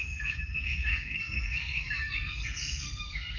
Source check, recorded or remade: remade